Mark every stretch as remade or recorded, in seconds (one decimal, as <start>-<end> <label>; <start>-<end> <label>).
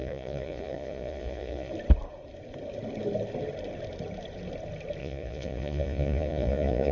0.0-1.7 remade; 1.7-5.0 recorded; 5.0-6.9 remade